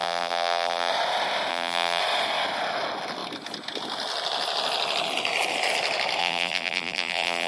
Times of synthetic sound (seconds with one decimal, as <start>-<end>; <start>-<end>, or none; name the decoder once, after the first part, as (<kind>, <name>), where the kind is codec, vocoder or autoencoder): 0.0-0.9 (vocoder, BigVGAN v2); 1.5-2.0; 6.2-7.5